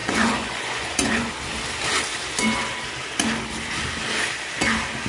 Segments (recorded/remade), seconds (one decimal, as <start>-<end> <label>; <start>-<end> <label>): 0.0-1.3 remade; 1.3-5.1 recorded